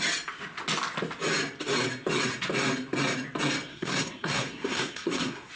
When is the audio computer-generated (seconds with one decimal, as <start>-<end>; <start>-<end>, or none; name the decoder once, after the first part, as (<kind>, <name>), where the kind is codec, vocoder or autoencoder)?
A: 3.7-5.5 (codec, SNAC)